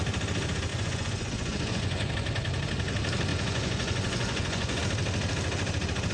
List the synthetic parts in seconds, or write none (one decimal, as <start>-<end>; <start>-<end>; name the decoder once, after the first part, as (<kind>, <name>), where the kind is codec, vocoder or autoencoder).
0.7-2.1 (vocoder, Vocos); 3.3-4.8